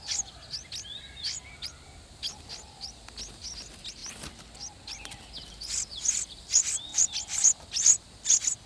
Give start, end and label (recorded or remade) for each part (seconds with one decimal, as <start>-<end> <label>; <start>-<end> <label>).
0.0-8.7 recorded